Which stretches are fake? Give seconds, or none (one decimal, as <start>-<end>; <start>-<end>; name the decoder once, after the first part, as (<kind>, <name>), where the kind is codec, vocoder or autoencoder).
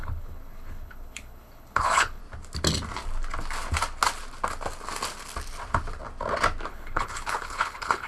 0.0-2.2 (codec, HILCodec); 6.7-8.1